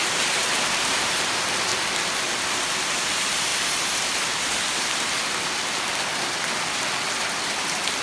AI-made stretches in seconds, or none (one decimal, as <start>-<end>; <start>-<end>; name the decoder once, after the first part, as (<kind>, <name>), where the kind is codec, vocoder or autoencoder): 0.0-1.7 (vocoder, BigVGAN v2); 2.9-3.5; 7.1-8.0